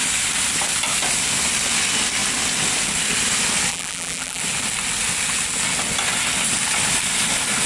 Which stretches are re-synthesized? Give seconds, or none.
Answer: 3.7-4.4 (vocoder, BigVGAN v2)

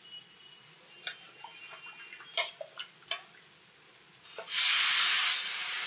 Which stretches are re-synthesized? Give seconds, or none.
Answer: none

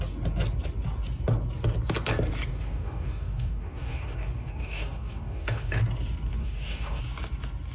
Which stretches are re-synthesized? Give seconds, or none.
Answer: 2.5-5.8 (codec, DAC); 6.4-7.0

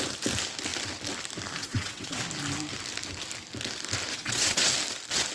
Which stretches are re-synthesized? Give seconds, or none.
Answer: 1.6-2.2 (vocoder, WaveNeXt); 4.1-4.7

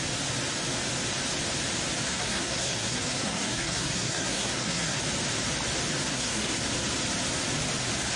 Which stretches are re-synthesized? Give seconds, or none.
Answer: 2.1-5.0 (codec, SNAC); 6.1-6.6